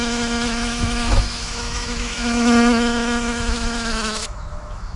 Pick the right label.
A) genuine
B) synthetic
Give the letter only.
B